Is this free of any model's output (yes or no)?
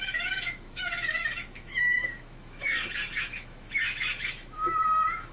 no